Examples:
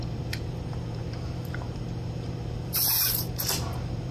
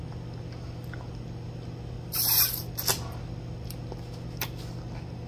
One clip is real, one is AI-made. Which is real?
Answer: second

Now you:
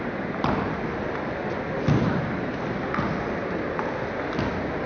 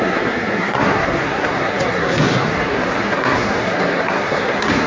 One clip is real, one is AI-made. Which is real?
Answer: first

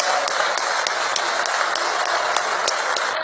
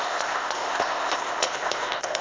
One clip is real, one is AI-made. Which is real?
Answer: first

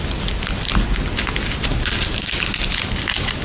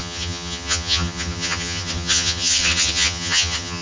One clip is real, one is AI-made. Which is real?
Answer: first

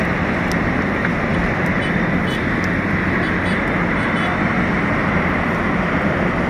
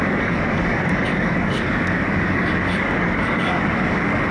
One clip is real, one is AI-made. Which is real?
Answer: first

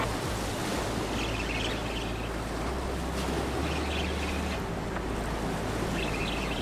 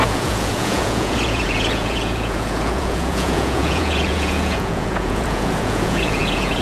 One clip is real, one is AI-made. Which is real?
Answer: first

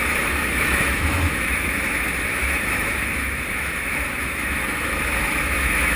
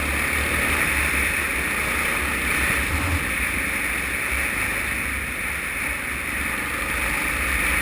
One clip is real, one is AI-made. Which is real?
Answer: second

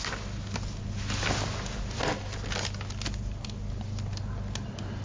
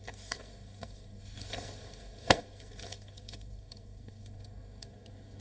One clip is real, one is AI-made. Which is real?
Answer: first